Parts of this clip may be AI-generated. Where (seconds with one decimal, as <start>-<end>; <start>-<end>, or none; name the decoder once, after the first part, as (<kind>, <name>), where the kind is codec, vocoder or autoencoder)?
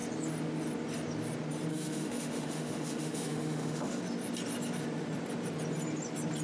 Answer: 1.7-4.0 (autoencoder, DAC-VAE)